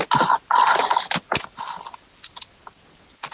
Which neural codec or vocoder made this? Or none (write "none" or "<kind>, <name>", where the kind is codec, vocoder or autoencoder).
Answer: none